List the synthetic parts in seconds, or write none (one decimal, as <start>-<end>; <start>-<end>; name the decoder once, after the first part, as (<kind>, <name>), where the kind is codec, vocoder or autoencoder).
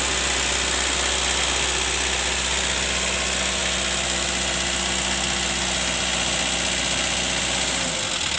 none